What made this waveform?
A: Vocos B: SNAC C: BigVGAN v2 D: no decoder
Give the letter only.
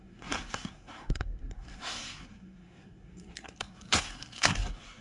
B